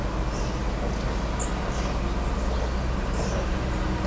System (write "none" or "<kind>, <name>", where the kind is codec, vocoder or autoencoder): none